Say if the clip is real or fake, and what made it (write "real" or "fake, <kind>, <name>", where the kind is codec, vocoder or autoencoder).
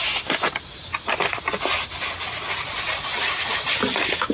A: real